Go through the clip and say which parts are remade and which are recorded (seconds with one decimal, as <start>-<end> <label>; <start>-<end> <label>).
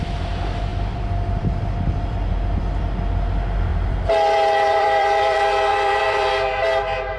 0.0-0.7 recorded; 0.7-2.3 remade; 2.3-3.7 recorded; 3.7-6.3 remade; 6.3-7.2 recorded